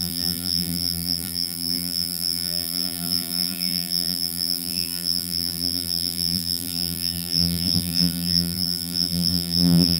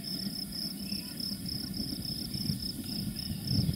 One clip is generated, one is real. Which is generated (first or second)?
first